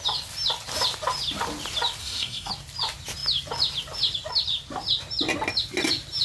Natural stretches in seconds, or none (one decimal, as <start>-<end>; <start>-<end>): 0.0-2.0; 2.5-6.2